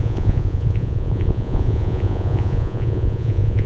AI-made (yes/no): yes